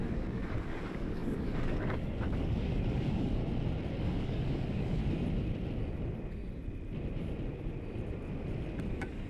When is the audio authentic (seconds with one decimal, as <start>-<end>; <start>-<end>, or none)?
3.4-4.0; 5.0-8.9